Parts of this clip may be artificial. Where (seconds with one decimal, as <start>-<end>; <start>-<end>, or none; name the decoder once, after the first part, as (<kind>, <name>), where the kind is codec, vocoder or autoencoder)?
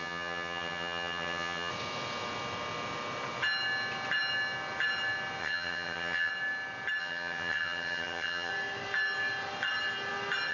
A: 0.0-1.7 (vocoder, HiFi-GAN); 5.4-6.3; 7.0-8.5